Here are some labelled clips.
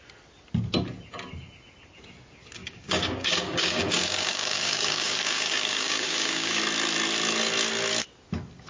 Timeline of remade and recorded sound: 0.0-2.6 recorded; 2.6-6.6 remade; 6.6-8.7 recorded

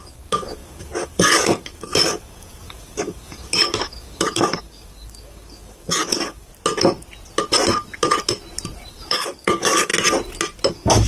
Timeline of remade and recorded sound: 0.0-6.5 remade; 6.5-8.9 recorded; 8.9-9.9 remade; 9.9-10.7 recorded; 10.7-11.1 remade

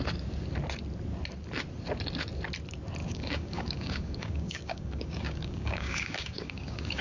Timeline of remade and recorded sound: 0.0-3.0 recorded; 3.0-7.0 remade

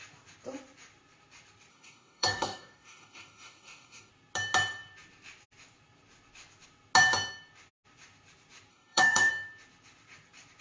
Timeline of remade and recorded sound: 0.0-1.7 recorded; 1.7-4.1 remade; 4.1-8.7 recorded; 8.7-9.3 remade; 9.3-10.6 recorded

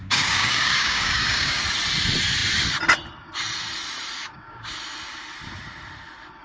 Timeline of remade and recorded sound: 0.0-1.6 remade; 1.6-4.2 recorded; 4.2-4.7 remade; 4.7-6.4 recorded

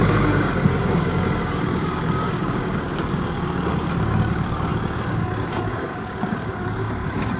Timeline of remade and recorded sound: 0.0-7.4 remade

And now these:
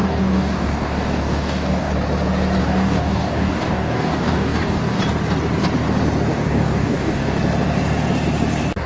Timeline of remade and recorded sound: 0.0-1.9 remade; 1.9-2.6 recorded; 2.6-5.0 remade; 5.0-6.3 recorded; 6.3-7.4 remade; 7.4-8.9 recorded